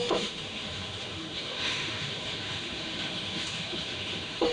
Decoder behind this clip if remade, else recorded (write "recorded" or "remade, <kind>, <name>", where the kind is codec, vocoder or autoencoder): remade, autoencoder, DAC-VAE